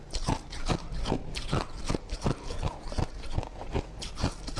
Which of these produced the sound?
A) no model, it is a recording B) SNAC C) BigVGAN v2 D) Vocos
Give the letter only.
A